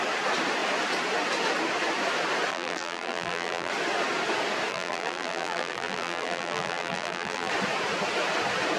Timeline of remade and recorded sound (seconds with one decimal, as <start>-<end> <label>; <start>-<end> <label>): 0.0-2.5 recorded; 2.5-3.7 remade; 3.7-4.7 recorded; 4.7-7.5 remade; 7.5-8.8 recorded